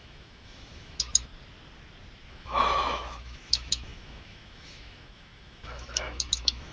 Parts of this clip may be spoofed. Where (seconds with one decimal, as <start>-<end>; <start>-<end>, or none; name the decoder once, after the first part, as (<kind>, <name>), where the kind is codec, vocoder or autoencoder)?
0.0-1.3 (autoencoder, DAC-VAE); 2.3-6.7